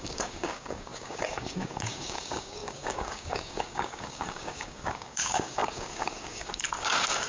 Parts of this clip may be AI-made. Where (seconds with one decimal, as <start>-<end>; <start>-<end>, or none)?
0.0-7.3